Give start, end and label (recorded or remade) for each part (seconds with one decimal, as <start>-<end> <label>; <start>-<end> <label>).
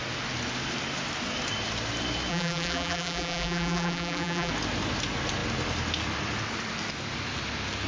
0.0-2.3 recorded; 2.3-4.5 remade; 4.5-7.9 recorded